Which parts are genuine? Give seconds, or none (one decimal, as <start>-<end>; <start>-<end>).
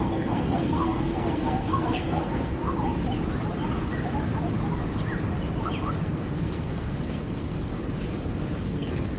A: 2.6-6.0; 7.7-8.6